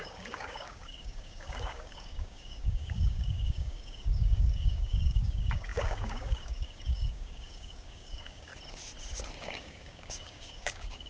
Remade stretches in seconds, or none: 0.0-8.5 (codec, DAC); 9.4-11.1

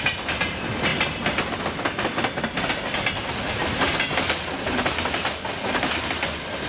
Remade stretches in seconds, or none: none

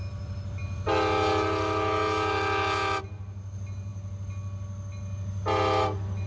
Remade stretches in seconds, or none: none

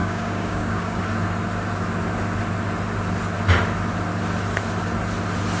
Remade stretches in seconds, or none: 0.0-1.0 (codec, DAC)

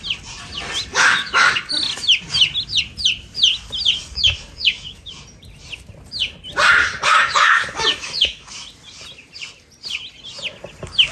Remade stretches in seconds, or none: 0.9-1.7 (codec, DAC); 4.0-5.1; 6.8-8.5